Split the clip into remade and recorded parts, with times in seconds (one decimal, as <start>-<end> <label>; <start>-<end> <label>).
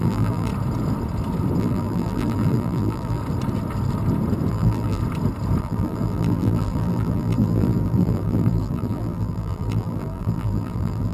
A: 0.0-0.5 remade; 0.5-1.6 recorded; 1.6-3.2 remade; 3.2-4.5 recorded; 4.5-5.0 remade; 5.0-5.6 recorded; 5.6-11.1 remade